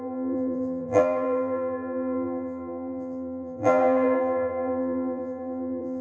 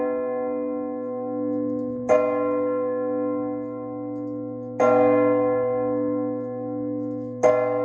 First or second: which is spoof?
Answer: first